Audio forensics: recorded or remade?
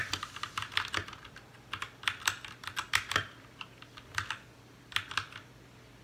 recorded